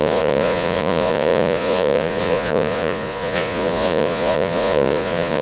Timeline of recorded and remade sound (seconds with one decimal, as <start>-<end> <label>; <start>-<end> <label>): 0.0-5.4 remade